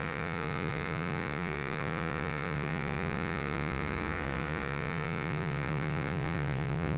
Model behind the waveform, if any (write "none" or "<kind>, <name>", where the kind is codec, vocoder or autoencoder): vocoder, Vocos